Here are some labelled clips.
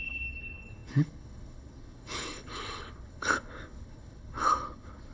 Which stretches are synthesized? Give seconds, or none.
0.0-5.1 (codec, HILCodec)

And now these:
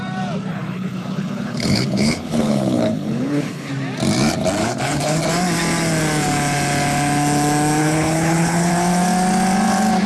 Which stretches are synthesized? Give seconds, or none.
0.5-3.7 (codec, HILCodec); 4.6-5.2; 7.8-8.7

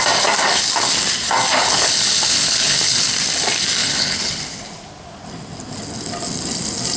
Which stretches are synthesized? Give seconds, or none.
1.6-3.1 (codec, HILCodec); 3.8-4.4